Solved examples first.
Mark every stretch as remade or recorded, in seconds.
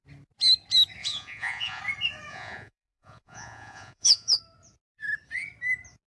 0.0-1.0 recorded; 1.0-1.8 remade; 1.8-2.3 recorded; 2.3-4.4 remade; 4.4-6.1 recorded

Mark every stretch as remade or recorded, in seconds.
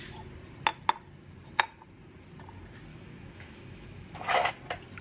0.0-2.9 recorded; 2.9-4.5 remade; 4.5-5.0 recorded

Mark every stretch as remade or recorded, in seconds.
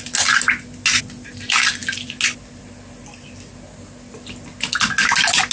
0.0-5.5 recorded